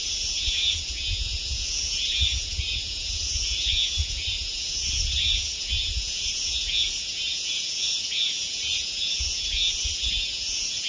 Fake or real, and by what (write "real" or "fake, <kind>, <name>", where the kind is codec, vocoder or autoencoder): fake, vocoder, Vocos